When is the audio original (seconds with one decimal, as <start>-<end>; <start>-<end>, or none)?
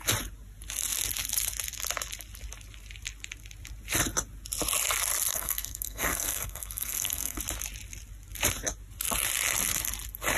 0.0-5.3; 7.4-10.4